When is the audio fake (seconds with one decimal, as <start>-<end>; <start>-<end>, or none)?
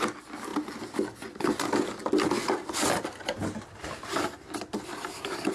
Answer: none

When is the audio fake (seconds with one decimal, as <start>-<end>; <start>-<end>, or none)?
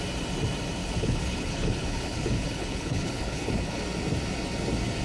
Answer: 0.8-3.8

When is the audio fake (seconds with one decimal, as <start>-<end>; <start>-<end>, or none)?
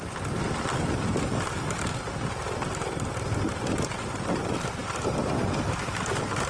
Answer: none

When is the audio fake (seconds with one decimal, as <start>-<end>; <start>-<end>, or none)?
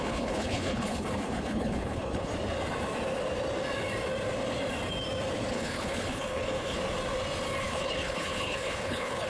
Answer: 0.0-2.3; 5.5-6.8; 7.6-9.3